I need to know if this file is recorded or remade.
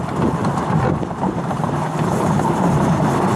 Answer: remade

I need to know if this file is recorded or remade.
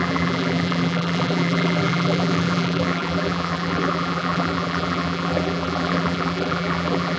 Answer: remade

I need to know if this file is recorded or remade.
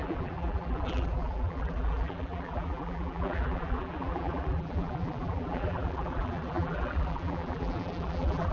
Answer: remade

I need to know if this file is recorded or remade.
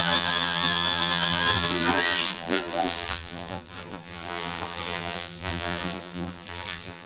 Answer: remade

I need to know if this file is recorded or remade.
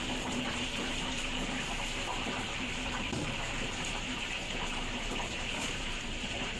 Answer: remade